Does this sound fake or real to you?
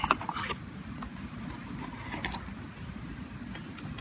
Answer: real